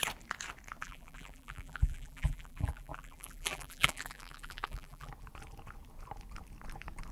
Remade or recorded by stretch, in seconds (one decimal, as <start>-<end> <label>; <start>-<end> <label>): 0.0-0.8 recorded; 0.8-5.1 remade; 5.1-7.1 recorded